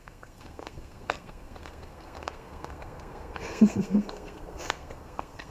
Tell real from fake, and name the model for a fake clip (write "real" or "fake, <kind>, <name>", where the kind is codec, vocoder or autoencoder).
fake, codec, SNAC